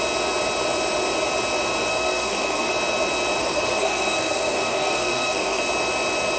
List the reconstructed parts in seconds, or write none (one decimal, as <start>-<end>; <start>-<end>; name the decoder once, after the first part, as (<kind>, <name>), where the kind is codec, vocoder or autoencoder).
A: 1.9-2.7 (codec, SNAC); 3.4-5.6